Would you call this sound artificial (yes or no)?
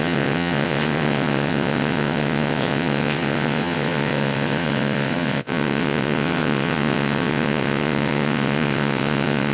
yes